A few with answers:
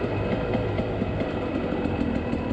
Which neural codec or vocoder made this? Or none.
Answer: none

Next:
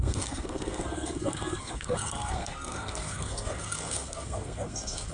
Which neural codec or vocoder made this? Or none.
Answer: codec, SNAC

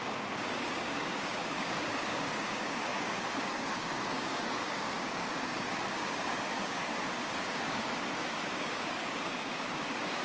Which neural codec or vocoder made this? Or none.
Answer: codec, DAC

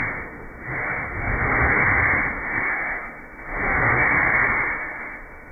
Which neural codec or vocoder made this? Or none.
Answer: autoencoder, DAC-VAE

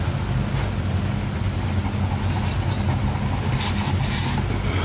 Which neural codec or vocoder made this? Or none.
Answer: none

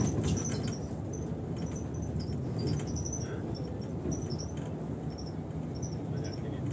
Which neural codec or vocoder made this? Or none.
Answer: none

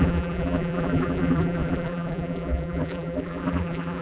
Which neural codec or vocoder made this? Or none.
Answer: vocoder, BigVGAN v2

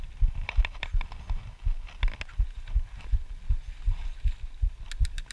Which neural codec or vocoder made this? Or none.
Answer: none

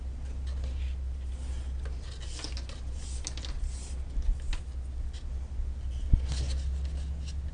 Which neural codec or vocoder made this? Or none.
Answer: none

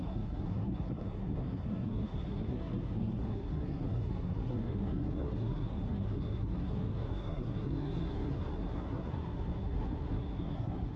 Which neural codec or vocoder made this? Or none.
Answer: codec, SNAC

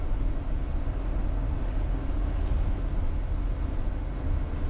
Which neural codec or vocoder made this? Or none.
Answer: none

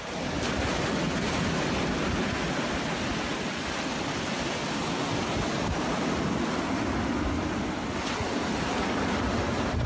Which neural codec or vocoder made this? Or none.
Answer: none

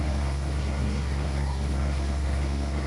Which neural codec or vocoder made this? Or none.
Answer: codec, SNAC